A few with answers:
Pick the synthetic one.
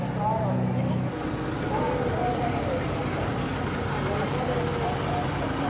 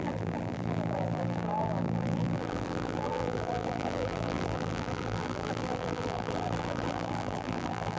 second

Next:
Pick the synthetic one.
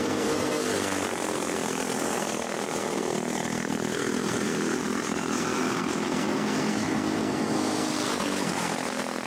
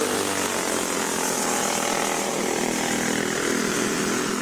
first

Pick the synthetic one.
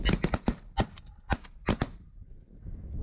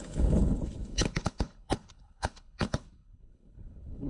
second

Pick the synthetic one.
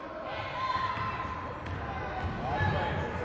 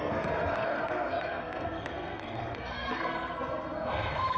second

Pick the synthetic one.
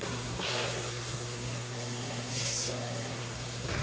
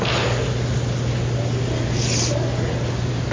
first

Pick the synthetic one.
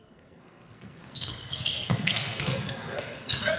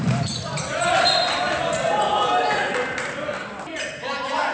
first